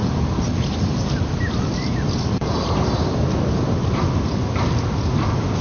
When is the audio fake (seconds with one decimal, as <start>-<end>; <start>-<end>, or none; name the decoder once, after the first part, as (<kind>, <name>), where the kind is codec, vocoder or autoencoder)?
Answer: none